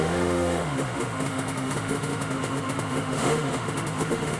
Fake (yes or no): yes